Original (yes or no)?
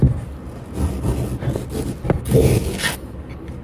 yes